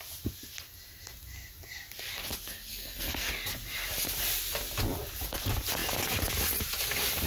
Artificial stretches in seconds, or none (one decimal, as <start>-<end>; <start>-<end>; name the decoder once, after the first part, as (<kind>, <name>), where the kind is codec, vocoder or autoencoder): 2.7-3.3 (codec, SNAC)